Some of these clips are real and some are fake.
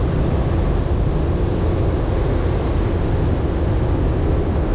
real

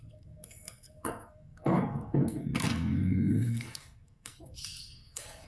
fake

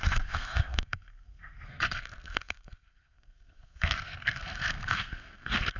fake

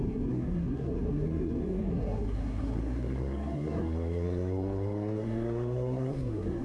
fake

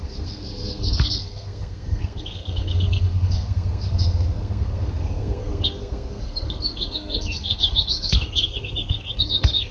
fake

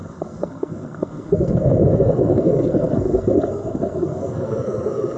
fake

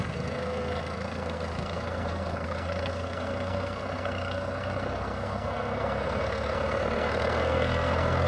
fake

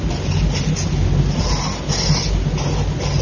real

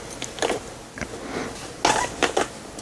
real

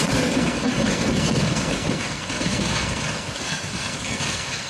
fake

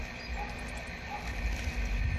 real